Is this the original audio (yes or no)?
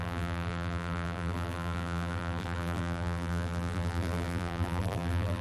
no